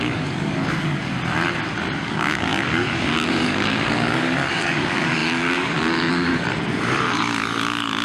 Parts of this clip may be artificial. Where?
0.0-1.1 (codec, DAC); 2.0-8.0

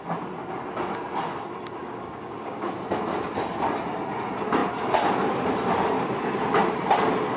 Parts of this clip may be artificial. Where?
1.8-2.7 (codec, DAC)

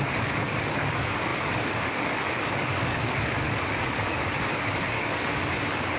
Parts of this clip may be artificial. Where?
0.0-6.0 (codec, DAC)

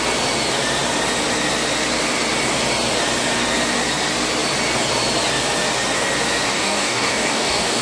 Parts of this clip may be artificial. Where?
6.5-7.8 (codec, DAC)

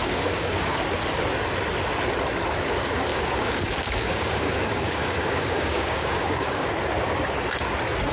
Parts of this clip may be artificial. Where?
0.0-0.8 (codec, DAC); 3.1-6.7

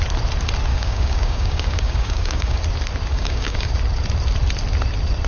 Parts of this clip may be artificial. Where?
0.7-2.6 (codec, DAC); 3.1-3.7

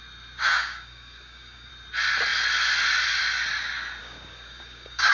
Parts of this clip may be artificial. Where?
0.5-1.7 (codec, DAC); 4.0-5.1